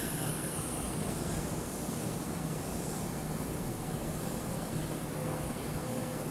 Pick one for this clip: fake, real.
fake